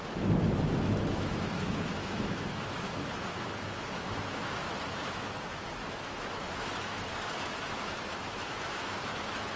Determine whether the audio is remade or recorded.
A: remade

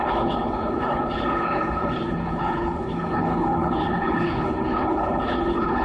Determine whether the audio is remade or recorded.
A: remade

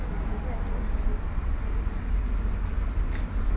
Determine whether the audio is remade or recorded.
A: recorded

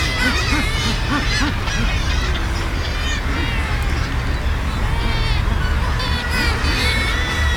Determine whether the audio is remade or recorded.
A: recorded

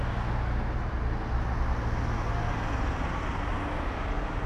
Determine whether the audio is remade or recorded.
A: recorded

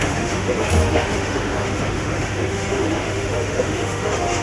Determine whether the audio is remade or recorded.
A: remade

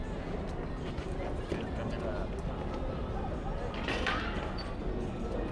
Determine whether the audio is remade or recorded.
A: recorded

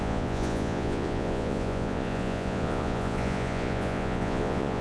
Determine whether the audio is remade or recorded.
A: remade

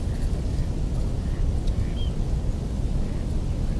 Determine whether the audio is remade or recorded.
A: recorded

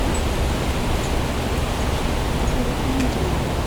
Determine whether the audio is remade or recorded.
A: recorded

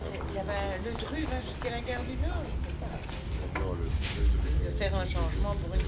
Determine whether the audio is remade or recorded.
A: recorded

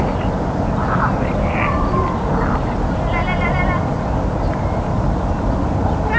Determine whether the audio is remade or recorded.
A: recorded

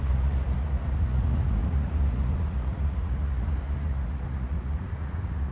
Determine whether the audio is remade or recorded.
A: remade